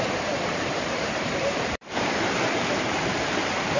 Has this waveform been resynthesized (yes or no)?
yes